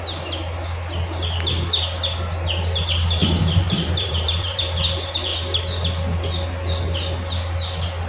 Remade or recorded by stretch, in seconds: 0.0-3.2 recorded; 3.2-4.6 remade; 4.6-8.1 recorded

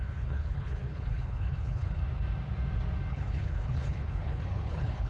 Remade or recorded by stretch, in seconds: 0.0-2.0 remade; 2.0-3.1 recorded; 3.1-5.1 remade

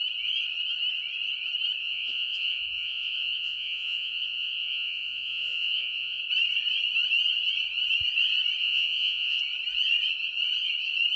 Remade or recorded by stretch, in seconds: 0.0-1.8 recorded; 1.8-6.2 remade; 6.2-8.6 recorded; 8.6-9.4 remade; 9.4-11.2 recorded